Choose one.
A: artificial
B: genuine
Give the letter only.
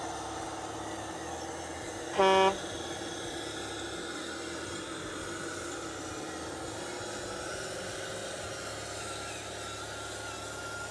B